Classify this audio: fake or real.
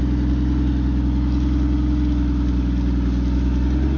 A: real